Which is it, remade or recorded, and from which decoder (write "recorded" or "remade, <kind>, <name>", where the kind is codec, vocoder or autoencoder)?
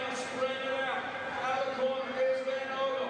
recorded